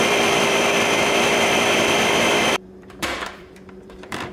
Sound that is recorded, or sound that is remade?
remade